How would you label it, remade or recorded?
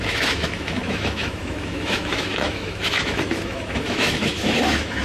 remade